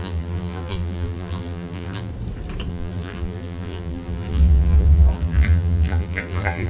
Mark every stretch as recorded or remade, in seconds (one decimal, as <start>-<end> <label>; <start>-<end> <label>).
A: 0.0-2.1 remade; 2.1-2.7 recorded; 2.7-6.7 remade